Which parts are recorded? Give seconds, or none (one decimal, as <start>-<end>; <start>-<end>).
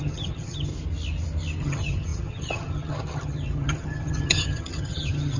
0.7-1.6